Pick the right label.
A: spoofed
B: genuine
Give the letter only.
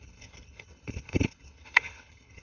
A